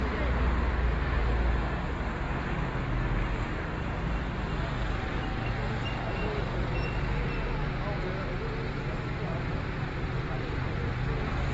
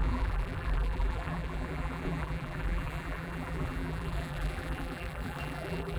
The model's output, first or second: second